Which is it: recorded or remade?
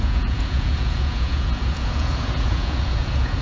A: remade